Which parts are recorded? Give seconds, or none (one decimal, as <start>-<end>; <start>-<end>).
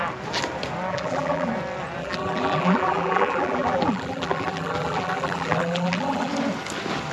0.0-0.9; 1.5-2.0; 6.3-7.1